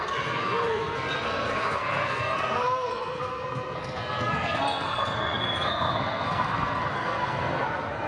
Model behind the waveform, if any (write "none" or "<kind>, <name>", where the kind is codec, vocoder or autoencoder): codec, SNAC